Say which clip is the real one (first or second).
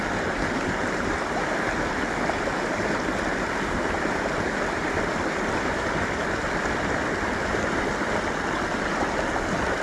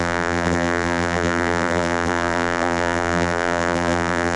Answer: first